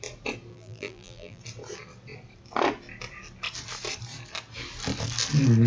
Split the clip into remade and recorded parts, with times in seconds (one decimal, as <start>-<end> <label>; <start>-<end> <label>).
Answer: 0.0-0.5 recorded; 0.5-1.4 remade; 1.4-5.7 recorded